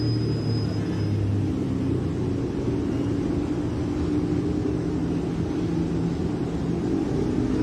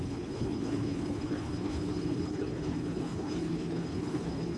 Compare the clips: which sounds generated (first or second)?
second